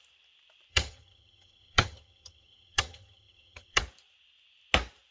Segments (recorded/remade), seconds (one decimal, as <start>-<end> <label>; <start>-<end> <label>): 0.0-0.7 recorded; 0.7-3.8 remade; 3.8-5.1 recorded